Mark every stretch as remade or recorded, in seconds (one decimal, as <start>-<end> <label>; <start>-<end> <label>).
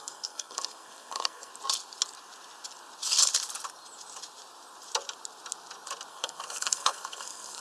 0.0-1.5 remade; 1.5-6.1 recorded; 6.1-7.6 remade